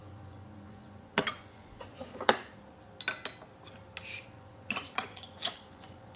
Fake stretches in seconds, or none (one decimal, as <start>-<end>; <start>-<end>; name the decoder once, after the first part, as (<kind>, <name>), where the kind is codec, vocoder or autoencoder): 0.0-2.5 (vocoder, Vocos); 4.2-6.2